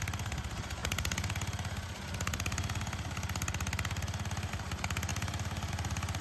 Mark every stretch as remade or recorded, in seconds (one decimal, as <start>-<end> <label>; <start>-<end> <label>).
0.0-6.2 recorded